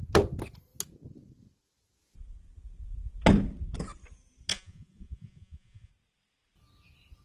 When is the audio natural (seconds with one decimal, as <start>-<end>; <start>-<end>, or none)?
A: 0.0-4.5; 5.9-7.2